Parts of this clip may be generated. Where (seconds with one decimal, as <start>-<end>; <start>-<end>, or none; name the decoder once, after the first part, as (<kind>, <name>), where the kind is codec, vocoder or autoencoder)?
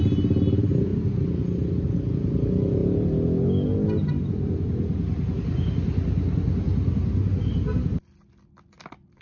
none